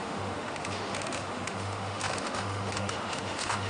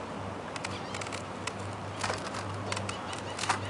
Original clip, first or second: second